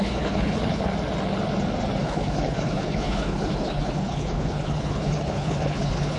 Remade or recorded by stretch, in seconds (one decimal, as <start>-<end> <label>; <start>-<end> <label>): 0.0-0.9 remade; 0.9-2.0 recorded; 2.0-6.2 remade